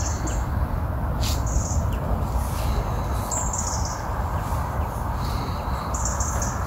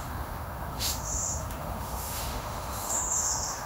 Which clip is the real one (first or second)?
first